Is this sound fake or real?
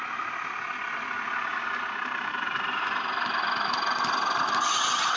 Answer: real